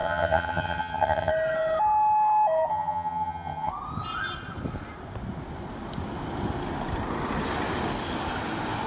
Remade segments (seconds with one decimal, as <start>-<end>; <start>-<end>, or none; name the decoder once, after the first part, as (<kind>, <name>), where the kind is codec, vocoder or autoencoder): 0.0-1.3 (vocoder, HiFi-GAN); 2.7-3.7